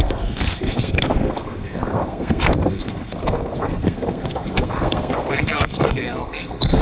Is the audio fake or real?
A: fake